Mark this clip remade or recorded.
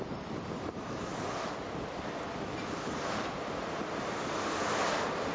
recorded